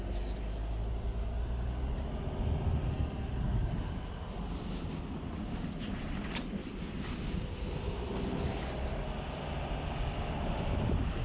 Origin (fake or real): real